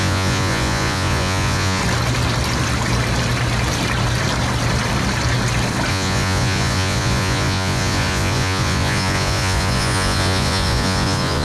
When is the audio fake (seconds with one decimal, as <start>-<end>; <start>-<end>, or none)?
0.0-1.8; 5.9-11.4